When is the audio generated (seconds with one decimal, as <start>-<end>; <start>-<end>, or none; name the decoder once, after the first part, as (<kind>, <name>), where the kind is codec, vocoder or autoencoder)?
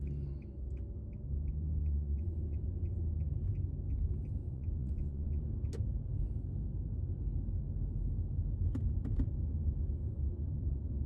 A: 1.8-2.7 (vocoder, Vocos); 4.4-5.4